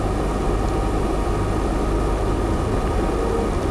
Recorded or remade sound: recorded